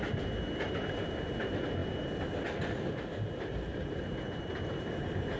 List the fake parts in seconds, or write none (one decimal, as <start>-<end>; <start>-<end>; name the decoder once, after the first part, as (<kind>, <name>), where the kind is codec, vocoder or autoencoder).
3.7-4.5 (vocoder, BigVGAN v2)